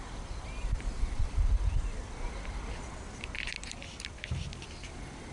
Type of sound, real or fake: real